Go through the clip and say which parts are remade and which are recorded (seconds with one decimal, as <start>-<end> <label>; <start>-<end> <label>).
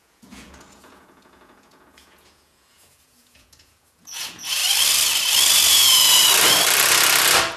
0.0-4.6 remade; 4.6-5.7 recorded; 5.7-6.2 remade; 6.2-7.6 recorded